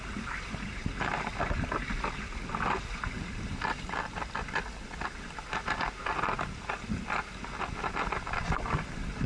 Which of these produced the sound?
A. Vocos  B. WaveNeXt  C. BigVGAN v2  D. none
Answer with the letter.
D